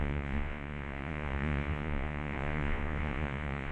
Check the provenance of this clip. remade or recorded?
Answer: remade